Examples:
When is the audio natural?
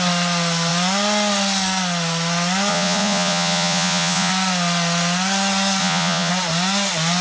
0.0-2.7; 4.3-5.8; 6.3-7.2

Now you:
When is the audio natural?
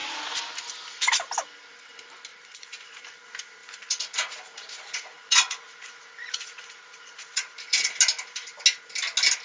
0.0-2.3; 3.0-3.6; 7.9-9.4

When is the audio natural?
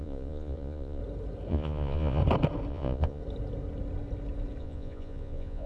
1.0-1.5; 2.2-2.7; 3.2-4.6